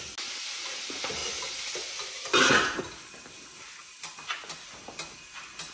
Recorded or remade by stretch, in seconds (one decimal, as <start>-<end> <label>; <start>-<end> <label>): 0.0-5.7 recorded